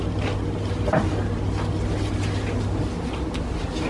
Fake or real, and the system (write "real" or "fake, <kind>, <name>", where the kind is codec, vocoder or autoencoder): real